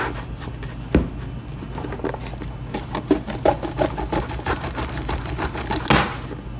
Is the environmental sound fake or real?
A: real